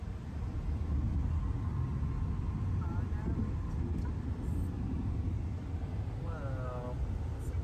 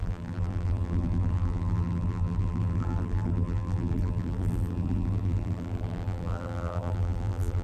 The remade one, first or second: second